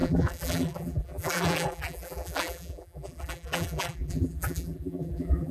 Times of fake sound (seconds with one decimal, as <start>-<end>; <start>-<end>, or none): 0.0-5.5